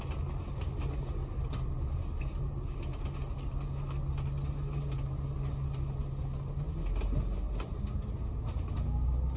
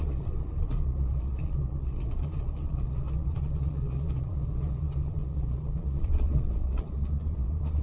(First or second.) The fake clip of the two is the second